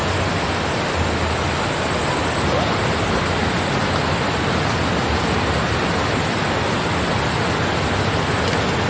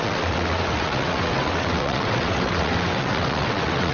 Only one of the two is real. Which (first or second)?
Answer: first